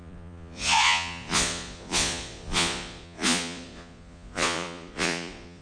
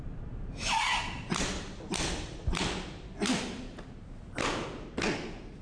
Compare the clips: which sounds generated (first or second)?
first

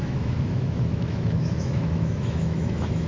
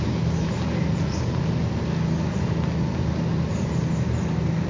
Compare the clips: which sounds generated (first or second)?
first